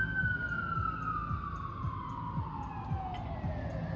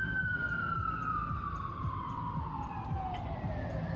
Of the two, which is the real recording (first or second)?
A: first